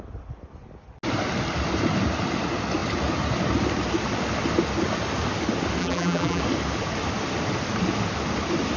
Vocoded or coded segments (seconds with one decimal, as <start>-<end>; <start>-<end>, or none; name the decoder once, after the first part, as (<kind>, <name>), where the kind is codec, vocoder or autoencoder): 5.8-6.4 (vocoder, BigVGAN v2)